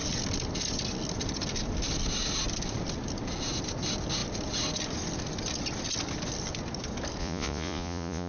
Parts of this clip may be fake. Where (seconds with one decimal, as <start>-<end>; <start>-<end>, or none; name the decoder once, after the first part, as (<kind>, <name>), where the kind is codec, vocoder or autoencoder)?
7.2-8.3 (vocoder, Vocos)